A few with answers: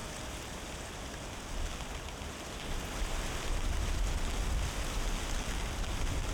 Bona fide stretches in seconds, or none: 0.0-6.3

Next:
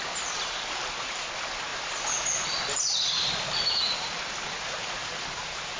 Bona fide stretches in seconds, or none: 0.0-5.8

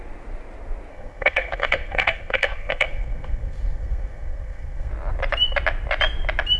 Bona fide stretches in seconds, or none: 0.0-0.9; 4.9-6.6

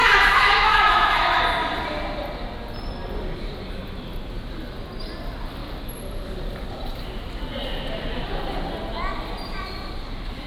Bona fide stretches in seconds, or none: 1.4-10.5

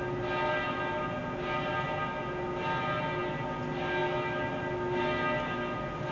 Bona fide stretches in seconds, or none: 0.0-6.1

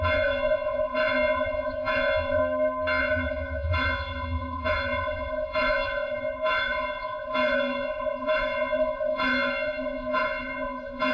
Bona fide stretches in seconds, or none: 2.4-3.0

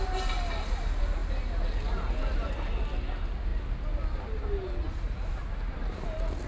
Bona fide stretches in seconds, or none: 0.0-6.5

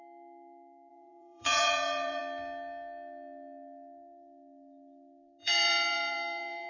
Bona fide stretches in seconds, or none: 0.0-0.9; 2.2-5.4